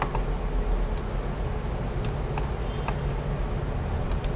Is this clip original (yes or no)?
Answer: yes